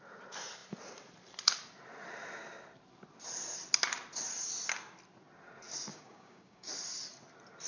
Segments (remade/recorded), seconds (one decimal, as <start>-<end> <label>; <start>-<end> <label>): 0.0-5.9 recorded; 5.9-6.7 remade; 6.7-7.7 recorded